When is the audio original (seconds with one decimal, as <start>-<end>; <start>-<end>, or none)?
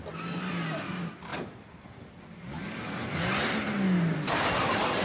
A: 0.0-5.0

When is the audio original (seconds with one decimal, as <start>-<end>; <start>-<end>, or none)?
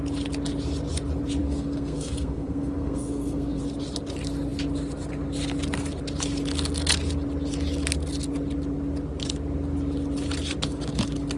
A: 0.0-1.4; 3.6-11.4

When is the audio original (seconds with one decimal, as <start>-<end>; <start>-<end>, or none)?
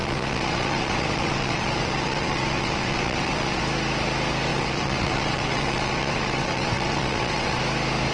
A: 3.6-4.5; 7.6-8.1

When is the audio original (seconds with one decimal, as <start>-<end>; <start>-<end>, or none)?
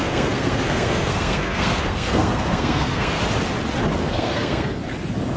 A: 3.2-4.0; 4.8-5.4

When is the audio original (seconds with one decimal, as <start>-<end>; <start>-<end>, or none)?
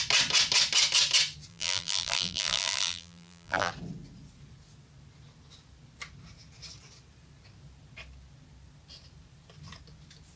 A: 0.0-1.5; 3.7-10.4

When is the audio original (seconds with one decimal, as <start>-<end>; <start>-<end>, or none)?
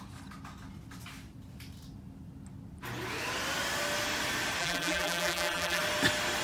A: 0.0-4.6; 5.8-6.4